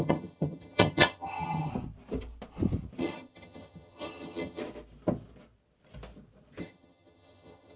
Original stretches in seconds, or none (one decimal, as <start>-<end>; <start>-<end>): 1.7-3.0; 4.6-6.6